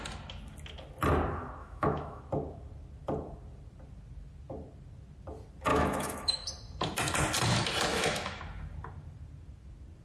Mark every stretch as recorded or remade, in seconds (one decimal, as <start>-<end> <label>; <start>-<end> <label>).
0.0-1.6 recorded; 1.6-2.2 remade; 2.2-5.7 recorded; 5.7-6.5 remade; 6.5-7.9 recorded; 7.9-8.4 remade; 8.4-10.0 recorded